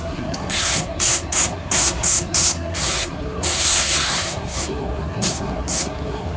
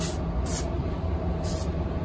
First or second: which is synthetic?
first